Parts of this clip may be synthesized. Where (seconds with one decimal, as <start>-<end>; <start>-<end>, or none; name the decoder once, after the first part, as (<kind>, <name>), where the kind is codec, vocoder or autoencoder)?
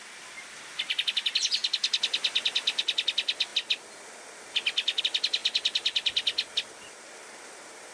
none